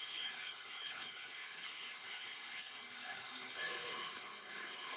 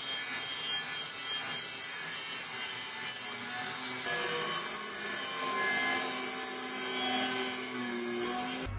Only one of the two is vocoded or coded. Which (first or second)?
first